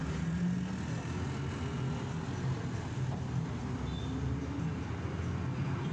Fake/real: real